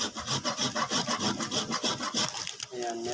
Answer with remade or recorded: recorded